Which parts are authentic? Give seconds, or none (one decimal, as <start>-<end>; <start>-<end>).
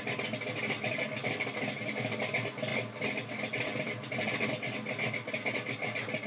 0.0-6.3